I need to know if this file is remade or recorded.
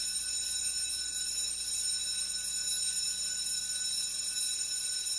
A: recorded